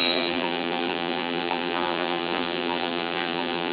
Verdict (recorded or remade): remade